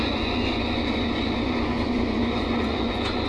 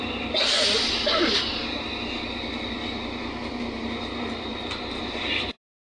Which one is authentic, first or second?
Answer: second